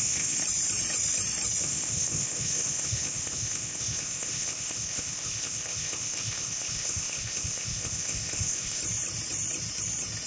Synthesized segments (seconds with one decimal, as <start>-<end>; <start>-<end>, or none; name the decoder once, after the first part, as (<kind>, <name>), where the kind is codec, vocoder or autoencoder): 0.0-0.4 (codec, ZipCodec); 1.6-8.8